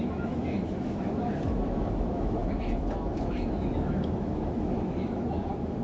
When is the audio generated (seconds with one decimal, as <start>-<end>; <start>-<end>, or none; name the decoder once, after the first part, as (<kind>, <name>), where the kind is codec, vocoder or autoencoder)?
0.0-5.8 (autoencoder, DAC-VAE)